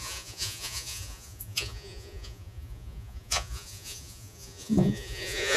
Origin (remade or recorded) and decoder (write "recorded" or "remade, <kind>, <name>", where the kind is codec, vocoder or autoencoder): remade, vocoder, Vocos